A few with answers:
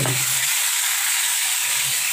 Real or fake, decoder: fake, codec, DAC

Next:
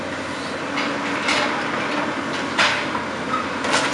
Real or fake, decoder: real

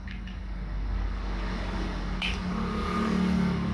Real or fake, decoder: fake, codec, DAC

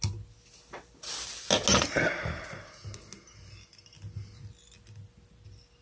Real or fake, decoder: real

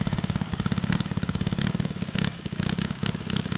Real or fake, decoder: fake, codec, DAC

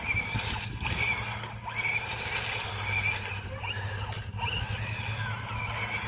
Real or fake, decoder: real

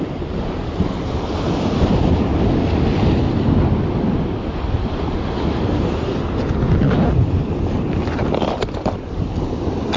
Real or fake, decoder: real